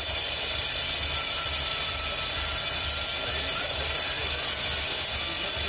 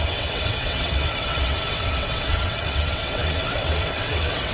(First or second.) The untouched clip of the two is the first